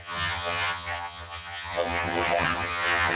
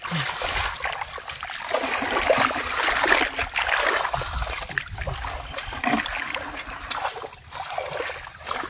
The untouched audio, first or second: second